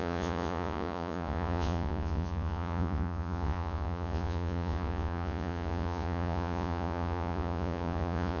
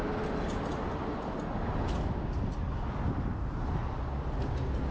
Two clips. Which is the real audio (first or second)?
second